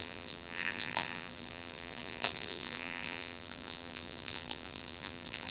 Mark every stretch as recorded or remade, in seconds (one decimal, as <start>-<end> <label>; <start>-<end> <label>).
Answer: 0.0-5.5 remade